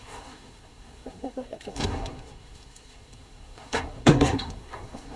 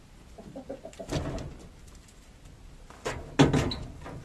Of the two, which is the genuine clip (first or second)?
second